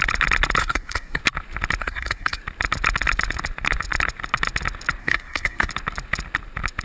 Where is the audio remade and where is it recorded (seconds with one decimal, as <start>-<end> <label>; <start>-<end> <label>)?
0.0-0.6 recorded; 0.6-1.2 remade; 1.2-1.8 recorded; 1.8-2.4 remade; 2.4-5.0 recorded; 5.0-5.7 remade; 5.7-6.8 recorded

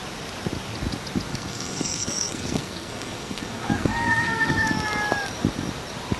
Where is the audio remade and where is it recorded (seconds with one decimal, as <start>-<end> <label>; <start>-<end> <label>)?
0.0-1.3 recorded; 1.3-4.7 remade; 4.7-6.2 recorded

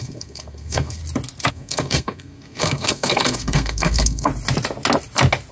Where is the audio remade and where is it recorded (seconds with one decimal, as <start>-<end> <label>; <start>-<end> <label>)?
0.0-1.0 remade; 1.0-1.5 recorded; 1.5-4.3 remade; 4.3-5.5 recorded

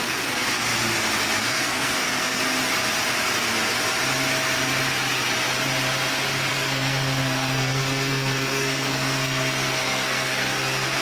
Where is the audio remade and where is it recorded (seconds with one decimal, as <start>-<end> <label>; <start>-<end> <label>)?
0.0-0.7 remade; 0.7-1.4 recorded; 1.4-2.4 remade; 2.4-6.5 recorded; 6.5-11.0 remade

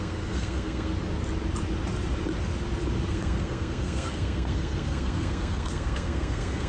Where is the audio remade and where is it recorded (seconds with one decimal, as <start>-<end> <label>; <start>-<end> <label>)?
0.0-0.9 remade; 0.9-3.1 recorded; 3.1-6.7 remade

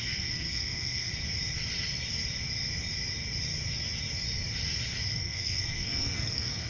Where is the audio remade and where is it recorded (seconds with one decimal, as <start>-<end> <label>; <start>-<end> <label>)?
0.0-1.1 remade; 1.1-5.1 recorded; 5.1-6.7 remade

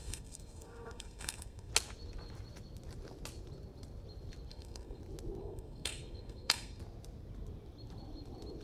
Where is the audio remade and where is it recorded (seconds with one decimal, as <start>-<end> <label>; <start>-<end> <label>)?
0.0-1.7 remade; 1.7-4.5 recorded; 4.5-5.0 remade; 5.0-5.4 recorded; 5.4-6.8 remade; 6.8-8.6 recorded

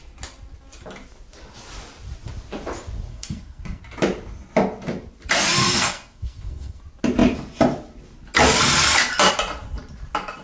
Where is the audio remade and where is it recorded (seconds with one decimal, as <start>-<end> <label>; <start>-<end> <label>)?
0.0-3.1 recorded; 3.1-3.8 remade; 3.8-5.6 recorded; 5.6-6.8 remade; 6.8-10.4 recorded